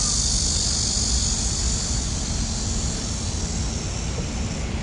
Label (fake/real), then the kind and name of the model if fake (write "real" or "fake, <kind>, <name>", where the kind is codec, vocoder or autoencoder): real